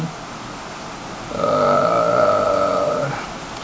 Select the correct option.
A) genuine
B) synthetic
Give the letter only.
A